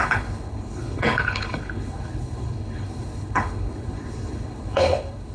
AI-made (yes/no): yes